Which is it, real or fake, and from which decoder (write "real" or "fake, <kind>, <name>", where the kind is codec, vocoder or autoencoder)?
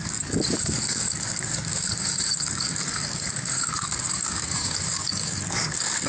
fake, codec, DAC